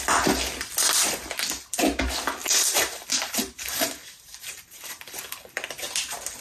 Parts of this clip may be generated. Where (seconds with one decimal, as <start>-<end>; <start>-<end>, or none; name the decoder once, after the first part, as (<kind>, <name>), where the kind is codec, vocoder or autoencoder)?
2.4-5.6 (vocoder, BigVGAN v2)